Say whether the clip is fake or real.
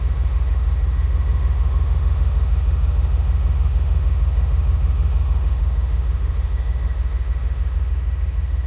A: fake